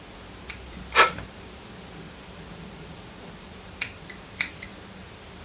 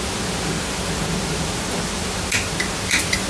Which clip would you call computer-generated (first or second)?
first